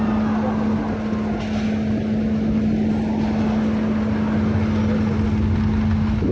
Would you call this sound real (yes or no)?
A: yes